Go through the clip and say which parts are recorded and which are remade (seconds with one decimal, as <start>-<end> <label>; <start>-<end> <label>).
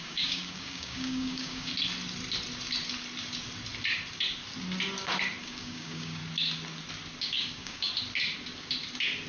0.0-1.7 remade; 1.7-5.4 recorded; 5.4-6.2 remade; 6.2-7.2 recorded; 7.2-7.9 remade; 7.9-9.3 recorded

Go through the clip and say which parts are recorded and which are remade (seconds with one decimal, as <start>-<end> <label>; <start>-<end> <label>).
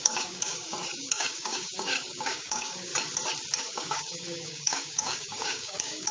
0.0-2.9 remade; 2.9-3.6 recorded; 3.6-6.1 remade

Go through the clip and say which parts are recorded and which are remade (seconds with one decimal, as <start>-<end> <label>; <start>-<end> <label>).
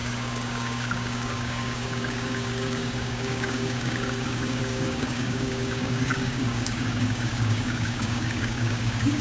0.0-9.2 remade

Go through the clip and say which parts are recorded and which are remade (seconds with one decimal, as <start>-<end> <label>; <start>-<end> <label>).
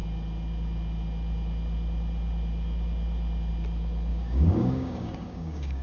0.0-4.1 recorded; 4.1-5.8 remade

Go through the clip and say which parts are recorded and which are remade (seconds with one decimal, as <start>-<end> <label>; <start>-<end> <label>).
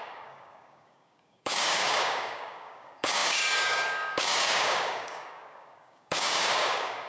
0.0-7.1 remade